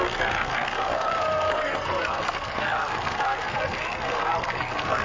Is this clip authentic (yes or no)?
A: no